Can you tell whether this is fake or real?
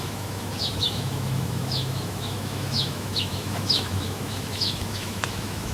fake